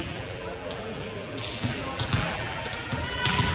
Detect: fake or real fake